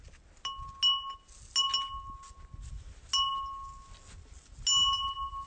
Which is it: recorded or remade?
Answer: recorded